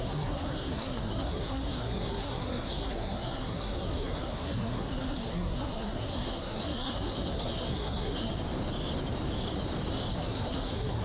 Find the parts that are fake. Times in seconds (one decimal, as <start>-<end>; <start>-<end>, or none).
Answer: 0.0-8.3; 10.1-11.0